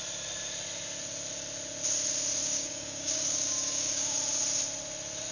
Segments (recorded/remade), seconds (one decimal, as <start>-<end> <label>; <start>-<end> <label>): 0.0-2.4 recorded; 2.4-4.2 remade; 4.2-5.3 recorded